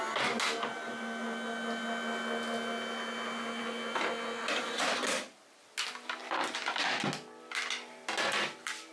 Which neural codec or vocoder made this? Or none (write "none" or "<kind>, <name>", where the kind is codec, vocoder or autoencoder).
none